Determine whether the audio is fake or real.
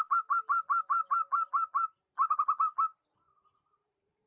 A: real